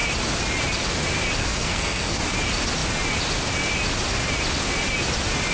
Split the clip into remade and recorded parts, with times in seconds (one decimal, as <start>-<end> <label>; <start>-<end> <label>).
0.0-1.4 recorded; 1.4-2.2 remade; 2.2-5.5 recorded